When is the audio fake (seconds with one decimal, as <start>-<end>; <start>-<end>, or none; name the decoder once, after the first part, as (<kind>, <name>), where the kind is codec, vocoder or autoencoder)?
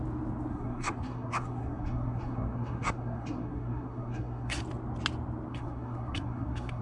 0.5-4.6 (codec, SNAC); 5.5-6.8